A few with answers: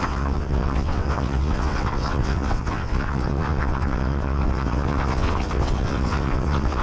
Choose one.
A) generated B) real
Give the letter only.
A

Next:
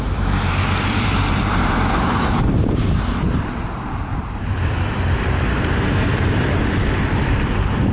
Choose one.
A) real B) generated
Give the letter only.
B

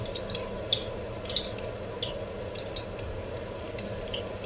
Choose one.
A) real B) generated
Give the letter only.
A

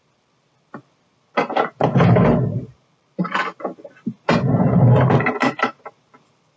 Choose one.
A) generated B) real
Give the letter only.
B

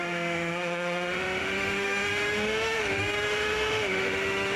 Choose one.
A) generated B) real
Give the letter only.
A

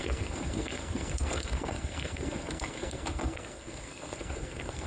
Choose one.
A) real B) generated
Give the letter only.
B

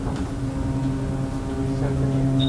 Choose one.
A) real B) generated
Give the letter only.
A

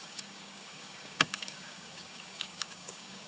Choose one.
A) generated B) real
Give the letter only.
A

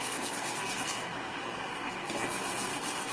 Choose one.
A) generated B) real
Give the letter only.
A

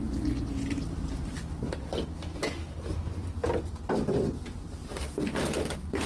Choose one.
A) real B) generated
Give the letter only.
A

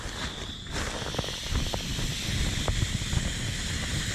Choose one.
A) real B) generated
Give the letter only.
A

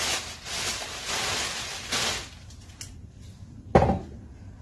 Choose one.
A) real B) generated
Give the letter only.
A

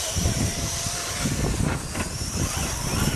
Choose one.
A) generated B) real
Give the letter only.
A